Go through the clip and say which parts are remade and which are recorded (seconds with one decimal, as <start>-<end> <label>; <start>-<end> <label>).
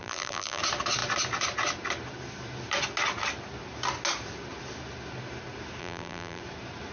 0.0-0.6 remade; 0.6-5.8 recorded; 5.8-6.4 remade; 6.4-6.9 recorded